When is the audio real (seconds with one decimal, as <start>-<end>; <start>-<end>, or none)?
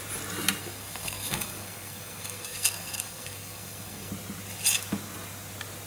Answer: 0.0-0.6; 4.1-5.9